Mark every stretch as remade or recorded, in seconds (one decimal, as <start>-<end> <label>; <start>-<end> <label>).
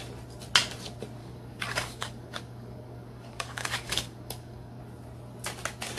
0.0-1.2 recorded; 1.2-4.8 remade; 4.8-6.0 recorded